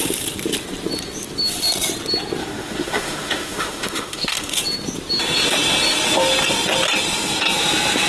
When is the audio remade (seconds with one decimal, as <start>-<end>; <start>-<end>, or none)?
2.4-4.6